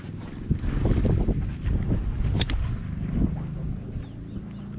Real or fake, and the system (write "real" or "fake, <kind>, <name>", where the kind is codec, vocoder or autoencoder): real